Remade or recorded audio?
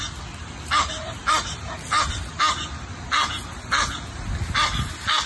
recorded